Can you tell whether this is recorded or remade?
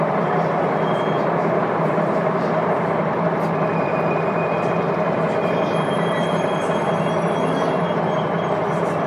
remade